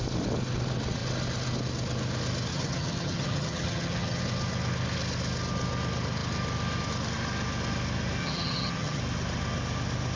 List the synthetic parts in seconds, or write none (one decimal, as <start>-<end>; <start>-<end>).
2.5-4.2; 8.2-9.0